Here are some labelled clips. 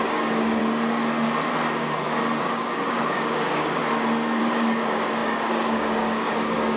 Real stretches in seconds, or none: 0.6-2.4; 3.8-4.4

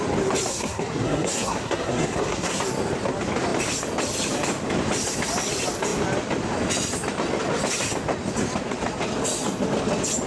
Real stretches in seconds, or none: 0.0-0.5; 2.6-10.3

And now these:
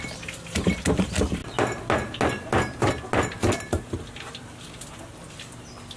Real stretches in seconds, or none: 0.0-6.0